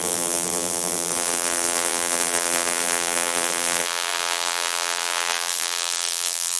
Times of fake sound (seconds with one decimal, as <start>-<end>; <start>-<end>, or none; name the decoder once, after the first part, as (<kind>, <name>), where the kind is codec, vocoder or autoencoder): 0.0-6.6 (vocoder, BigVGAN v2)